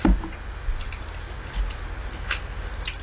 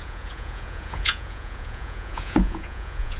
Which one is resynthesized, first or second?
second